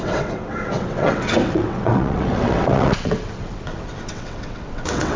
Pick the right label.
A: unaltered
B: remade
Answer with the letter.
B